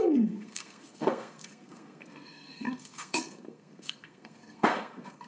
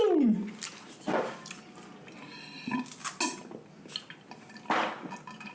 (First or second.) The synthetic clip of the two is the first